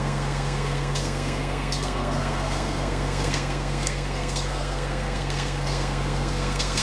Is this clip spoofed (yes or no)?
yes